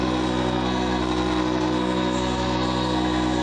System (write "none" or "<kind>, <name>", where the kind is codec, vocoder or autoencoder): codec, SNAC